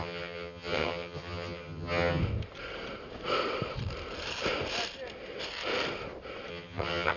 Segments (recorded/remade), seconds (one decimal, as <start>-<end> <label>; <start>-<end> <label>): 0.0-2.2 remade; 2.2-6.5 recorded; 6.5-7.2 remade